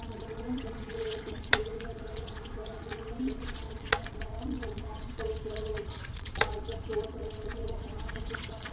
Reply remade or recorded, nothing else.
remade